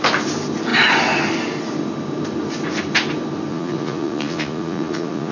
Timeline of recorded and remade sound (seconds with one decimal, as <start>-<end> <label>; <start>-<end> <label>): 0.0-3.5 recorded; 3.5-5.3 remade